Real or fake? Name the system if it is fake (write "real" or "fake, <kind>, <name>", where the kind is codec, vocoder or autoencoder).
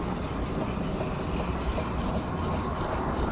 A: real